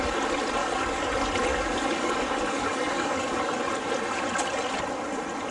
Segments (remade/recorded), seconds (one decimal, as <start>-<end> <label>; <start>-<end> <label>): 0.0-0.6 recorded; 0.6-1.1 remade; 1.1-1.5 recorded; 1.5-3.6 remade; 3.6-5.5 recorded